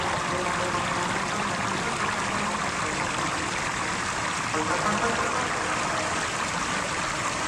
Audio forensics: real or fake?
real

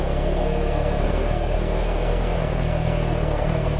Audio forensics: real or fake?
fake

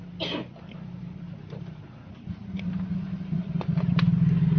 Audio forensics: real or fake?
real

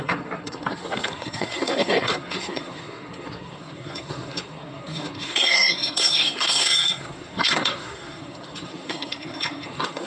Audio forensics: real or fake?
fake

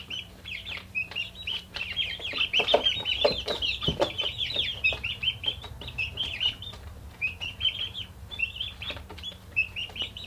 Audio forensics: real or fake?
fake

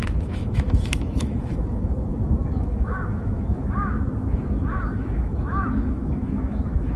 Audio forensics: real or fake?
fake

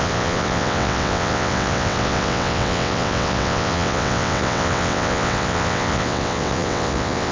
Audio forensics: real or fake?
fake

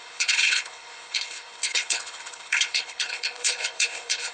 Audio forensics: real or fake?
fake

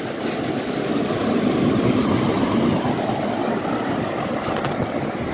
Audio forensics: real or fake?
real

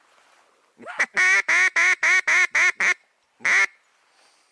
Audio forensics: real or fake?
real